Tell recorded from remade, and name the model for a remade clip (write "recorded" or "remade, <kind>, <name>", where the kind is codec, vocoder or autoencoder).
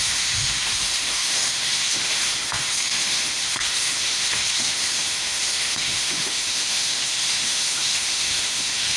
remade, autoencoder, DAC-VAE